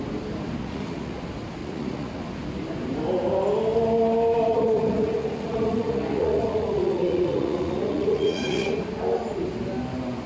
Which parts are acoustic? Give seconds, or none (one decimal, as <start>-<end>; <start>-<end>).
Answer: 0.0-0.6; 1.2-1.6; 2.2-4.5; 8.8-10.3